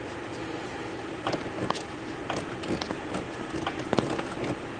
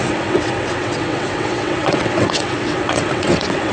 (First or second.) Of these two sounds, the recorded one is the first